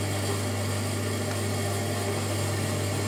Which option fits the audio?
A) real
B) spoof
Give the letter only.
A